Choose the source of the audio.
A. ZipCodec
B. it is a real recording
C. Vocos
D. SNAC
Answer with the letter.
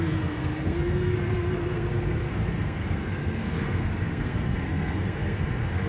D